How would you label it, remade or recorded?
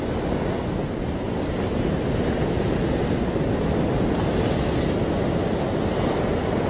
recorded